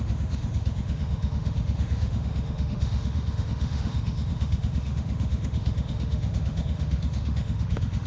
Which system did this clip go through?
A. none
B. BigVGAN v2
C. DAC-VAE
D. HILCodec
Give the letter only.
C